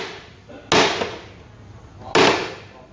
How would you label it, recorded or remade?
recorded